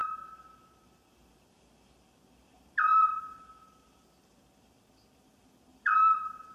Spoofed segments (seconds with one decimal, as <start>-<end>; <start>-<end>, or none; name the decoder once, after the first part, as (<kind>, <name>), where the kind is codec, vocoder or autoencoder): 2.9-3.4 (vocoder, BigVGAN v2); 5.7-6.5